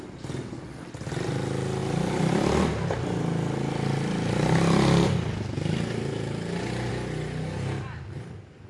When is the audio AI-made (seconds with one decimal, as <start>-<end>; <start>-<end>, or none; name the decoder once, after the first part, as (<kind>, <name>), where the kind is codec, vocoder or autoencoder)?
none